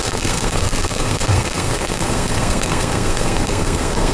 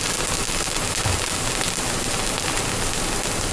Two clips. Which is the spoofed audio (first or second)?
first